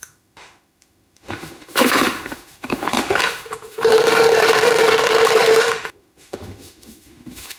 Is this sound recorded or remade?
remade